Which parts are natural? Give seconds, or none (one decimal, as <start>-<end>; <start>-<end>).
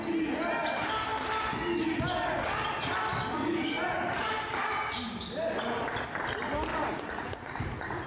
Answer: 0.0-3.4; 4.3-6.7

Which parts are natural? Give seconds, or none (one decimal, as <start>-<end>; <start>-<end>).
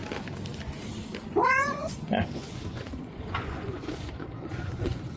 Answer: 0.0-1.4